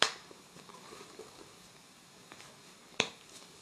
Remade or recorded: remade